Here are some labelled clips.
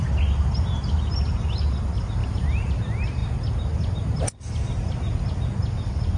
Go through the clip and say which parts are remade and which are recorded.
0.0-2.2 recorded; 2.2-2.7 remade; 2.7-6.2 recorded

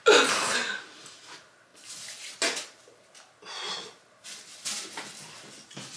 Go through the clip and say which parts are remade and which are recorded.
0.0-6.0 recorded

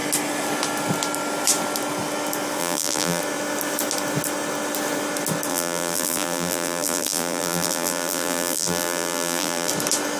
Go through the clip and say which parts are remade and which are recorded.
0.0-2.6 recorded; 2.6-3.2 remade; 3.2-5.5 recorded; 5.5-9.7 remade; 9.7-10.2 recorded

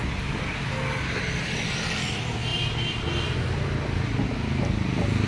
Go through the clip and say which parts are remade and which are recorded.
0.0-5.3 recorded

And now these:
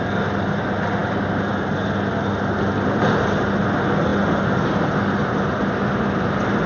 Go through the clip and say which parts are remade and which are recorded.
0.0-6.7 recorded

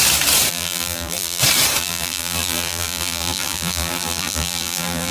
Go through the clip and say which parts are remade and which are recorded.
0.0-0.5 recorded; 0.5-1.4 remade; 1.4-1.8 recorded; 1.8-5.1 remade